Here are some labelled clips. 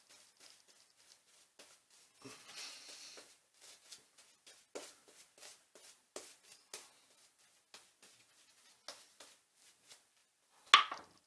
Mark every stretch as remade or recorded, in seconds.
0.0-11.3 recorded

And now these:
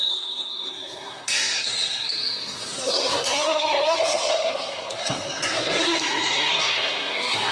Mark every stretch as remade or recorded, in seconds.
0.0-7.5 remade